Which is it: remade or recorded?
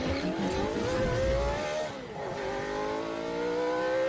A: recorded